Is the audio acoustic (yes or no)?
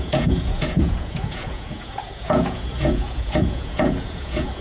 no